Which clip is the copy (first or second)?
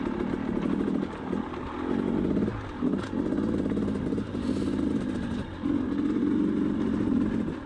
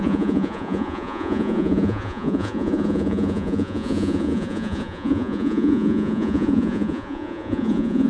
second